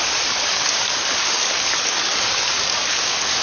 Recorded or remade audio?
remade